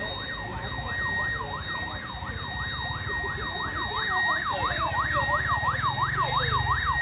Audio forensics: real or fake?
real